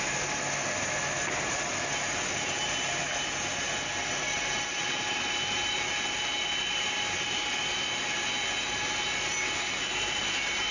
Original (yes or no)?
yes